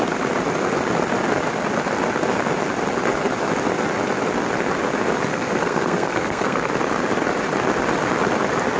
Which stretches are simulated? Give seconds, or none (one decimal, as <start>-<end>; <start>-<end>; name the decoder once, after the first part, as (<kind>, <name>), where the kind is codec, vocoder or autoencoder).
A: 5.3-6.7 (codec, SNAC)